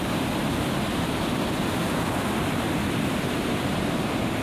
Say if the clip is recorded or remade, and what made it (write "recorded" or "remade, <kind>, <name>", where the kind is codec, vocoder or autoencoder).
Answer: recorded